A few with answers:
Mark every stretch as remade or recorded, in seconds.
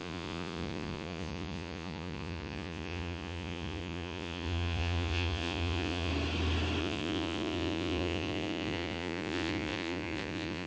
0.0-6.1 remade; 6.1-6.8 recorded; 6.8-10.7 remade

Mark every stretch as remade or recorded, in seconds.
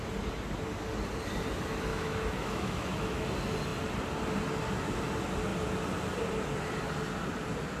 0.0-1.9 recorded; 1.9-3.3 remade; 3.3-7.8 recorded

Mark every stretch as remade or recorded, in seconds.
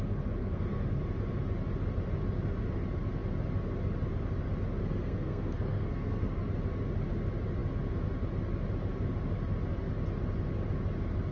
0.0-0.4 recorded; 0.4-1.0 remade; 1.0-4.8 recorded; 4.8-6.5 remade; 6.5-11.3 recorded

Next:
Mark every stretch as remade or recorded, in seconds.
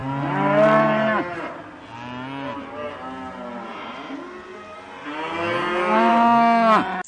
0.0-7.1 recorded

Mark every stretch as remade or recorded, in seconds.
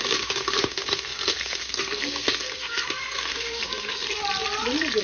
0.0-4.2 remade; 4.2-5.0 recorded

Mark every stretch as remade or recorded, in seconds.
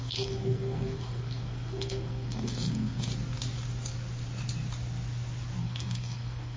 0.0-3.1 remade; 3.1-5.6 recorded; 5.6-6.6 remade